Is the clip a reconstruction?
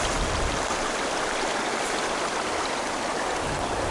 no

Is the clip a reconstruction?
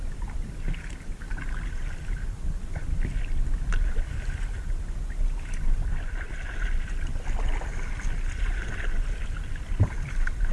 no